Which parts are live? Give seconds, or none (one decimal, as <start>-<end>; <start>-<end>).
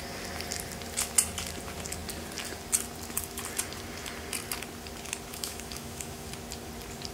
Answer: 0.0-5.3; 6.3-7.1